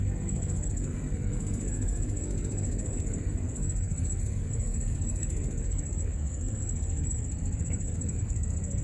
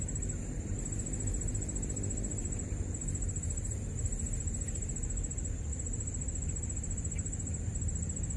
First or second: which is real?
second